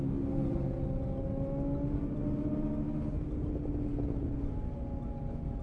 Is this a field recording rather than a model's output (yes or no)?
yes